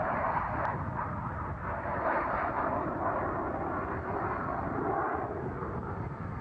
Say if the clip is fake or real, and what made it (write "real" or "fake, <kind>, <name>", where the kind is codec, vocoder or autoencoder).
real